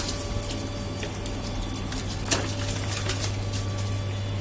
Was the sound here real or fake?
real